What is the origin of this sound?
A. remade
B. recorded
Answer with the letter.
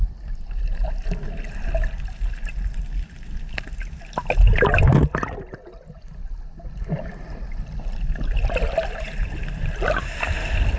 B